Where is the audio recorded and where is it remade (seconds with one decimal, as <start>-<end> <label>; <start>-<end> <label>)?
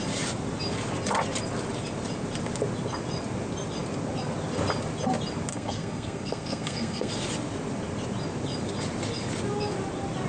0.0-5.5 recorded; 5.5-7.1 remade; 7.1-10.3 recorded